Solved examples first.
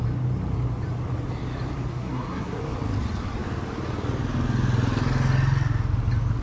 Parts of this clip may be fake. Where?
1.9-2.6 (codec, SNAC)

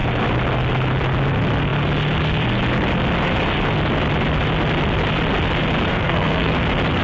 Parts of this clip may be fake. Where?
5.9-6.5 (codec, SNAC)

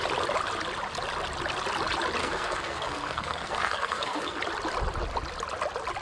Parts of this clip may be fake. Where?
2.2-4.4 (codec, SNAC)

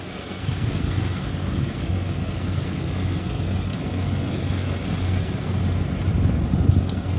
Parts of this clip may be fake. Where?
0.0-5.6 (codec, SNAC); 6.8-7.2

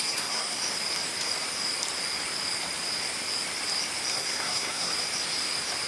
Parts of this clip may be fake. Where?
0.0-0.6 (codec, SNAC); 4.1-4.9

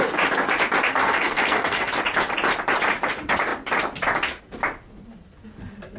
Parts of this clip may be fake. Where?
0.9-1.9 (codec, SNAC)